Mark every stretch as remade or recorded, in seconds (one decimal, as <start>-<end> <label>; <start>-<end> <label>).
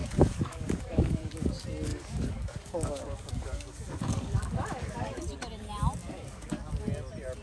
0.0-1.5 remade; 1.5-1.9 recorded; 1.9-5.2 remade; 5.2-6.0 recorded; 6.0-6.7 remade; 6.7-7.4 recorded